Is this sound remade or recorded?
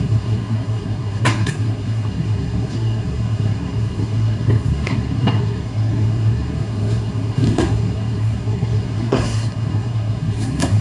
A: remade